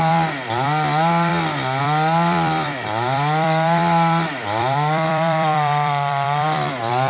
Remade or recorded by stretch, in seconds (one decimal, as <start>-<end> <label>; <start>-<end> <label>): 0.0-1.3 remade; 1.3-1.8 recorded; 1.8-7.1 remade